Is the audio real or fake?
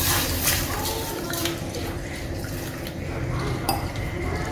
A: fake